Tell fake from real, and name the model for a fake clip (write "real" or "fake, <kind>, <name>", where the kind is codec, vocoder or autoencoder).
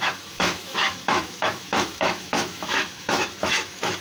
fake, autoencoder, DAC-VAE